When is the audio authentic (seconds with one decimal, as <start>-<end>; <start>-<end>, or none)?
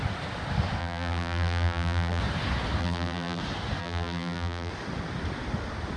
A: 0.0-0.8; 2.2-2.8; 3.4-3.8; 4.7-6.0